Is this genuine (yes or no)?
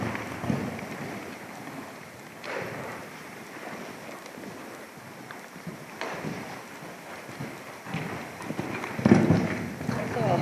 yes